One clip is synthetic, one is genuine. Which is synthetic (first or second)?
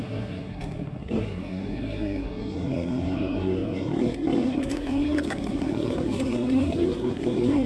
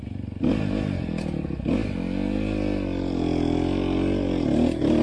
first